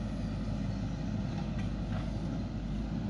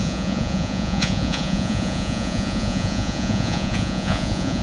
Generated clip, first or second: second